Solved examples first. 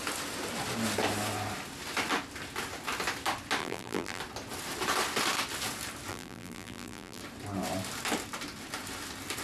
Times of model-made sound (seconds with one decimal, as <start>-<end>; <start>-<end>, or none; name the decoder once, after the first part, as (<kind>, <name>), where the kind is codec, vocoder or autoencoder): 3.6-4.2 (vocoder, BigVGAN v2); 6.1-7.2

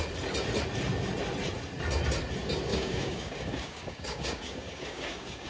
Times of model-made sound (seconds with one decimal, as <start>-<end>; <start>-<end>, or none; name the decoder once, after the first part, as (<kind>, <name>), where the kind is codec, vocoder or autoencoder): 2.7-5.5 (codec, DAC)

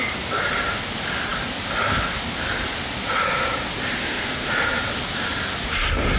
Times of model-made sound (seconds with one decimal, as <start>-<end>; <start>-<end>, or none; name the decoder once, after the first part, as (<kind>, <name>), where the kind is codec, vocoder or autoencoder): 4.0-4.5 (autoencoder, DAC-VAE)

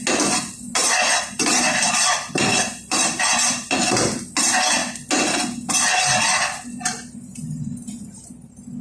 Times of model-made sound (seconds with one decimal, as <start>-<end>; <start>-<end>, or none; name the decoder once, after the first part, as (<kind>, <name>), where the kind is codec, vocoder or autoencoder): 0.8-4.0 (vocoder, BigVGAN v2)